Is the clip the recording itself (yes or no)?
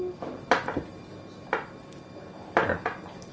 yes